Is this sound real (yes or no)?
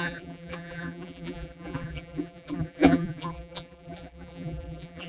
no